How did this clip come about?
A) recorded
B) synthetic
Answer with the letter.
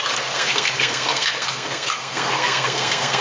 B